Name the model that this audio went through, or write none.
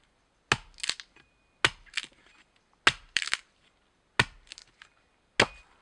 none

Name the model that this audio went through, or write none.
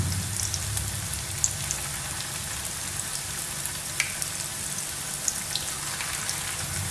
none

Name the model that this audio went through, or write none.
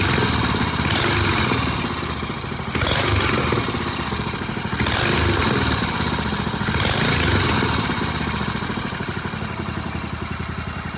none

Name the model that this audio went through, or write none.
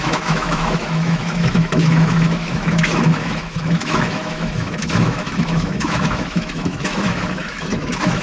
autoencoder, DAC-VAE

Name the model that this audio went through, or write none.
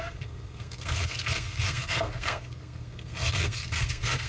codec, SNAC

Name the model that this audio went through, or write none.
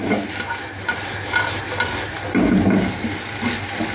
none